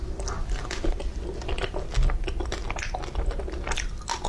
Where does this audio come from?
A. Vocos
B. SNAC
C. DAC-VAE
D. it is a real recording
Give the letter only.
D